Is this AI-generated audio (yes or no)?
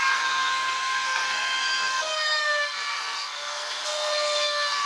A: yes